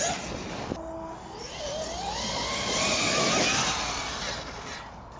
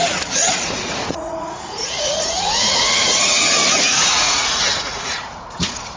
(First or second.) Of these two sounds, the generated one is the second